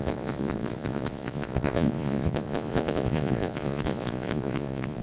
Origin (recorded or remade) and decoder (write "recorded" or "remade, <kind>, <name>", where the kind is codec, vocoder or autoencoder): remade, vocoder, Vocos